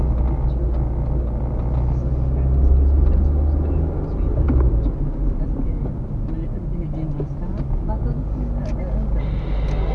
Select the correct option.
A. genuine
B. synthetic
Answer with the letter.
A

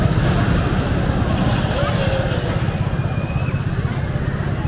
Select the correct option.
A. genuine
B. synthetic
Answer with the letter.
A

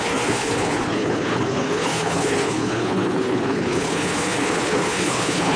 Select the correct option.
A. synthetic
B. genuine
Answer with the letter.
A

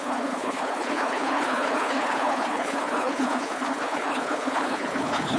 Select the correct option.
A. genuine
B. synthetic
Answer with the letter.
B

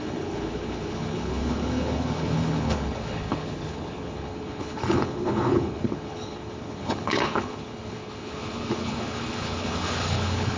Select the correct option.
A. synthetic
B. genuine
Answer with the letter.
A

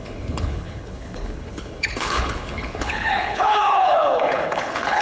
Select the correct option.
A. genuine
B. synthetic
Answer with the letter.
B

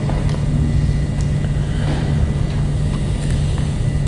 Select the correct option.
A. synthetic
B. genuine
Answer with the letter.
B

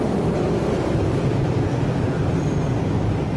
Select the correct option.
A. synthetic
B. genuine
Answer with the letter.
B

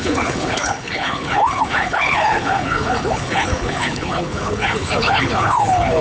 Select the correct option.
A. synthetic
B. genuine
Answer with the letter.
A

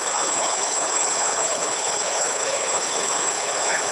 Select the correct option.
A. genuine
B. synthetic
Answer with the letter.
B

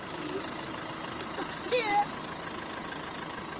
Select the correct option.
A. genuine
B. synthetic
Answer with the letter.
A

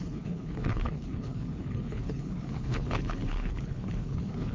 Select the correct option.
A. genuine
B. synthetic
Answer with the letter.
B